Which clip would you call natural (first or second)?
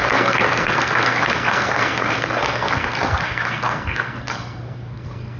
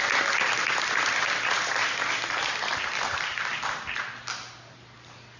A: second